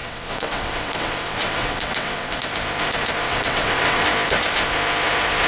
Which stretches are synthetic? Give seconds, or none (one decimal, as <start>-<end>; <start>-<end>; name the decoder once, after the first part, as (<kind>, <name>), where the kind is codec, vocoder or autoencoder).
0.0-2.4 (vocoder, WaveNeXt); 3.2-4.0

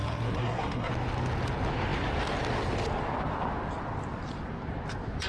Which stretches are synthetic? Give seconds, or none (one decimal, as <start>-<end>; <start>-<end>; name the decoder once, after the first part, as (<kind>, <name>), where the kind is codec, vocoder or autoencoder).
0.0-0.9 (codec, SNAC)

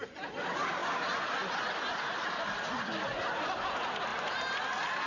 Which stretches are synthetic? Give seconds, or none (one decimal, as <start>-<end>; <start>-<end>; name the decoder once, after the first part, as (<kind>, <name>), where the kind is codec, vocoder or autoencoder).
none